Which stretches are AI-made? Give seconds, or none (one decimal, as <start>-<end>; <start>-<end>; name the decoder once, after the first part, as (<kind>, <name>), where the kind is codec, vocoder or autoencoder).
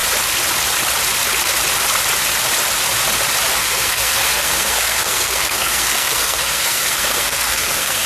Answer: 3.6-8.1 (codec, SNAC)